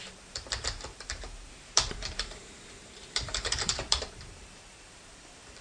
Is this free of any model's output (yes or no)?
no